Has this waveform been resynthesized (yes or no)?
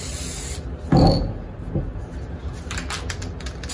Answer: no